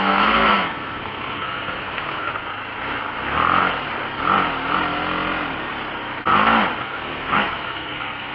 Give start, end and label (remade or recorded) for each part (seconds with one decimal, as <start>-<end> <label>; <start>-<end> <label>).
0.0-2.3 remade; 2.3-6.8 recorded; 6.8-8.3 remade